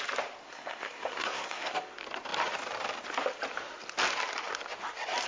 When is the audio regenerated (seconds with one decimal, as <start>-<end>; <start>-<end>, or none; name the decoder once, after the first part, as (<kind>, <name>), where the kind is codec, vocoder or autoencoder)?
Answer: 0.4-1.7 (codec, SNAC)